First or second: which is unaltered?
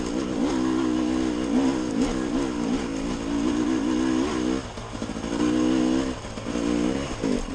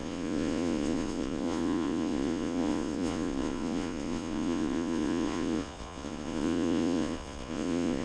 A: first